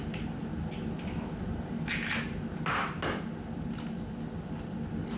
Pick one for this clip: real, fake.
real